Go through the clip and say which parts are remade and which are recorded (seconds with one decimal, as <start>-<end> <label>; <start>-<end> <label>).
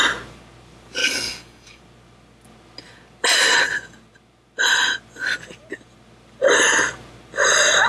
0.0-1.0 recorded; 1.0-1.8 remade; 1.8-7.9 recorded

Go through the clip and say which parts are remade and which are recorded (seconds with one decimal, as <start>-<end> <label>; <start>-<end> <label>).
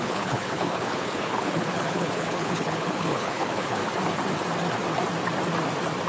0.0-3.8 remade; 3.8-6.1 recorded